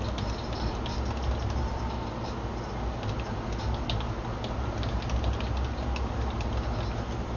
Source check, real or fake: real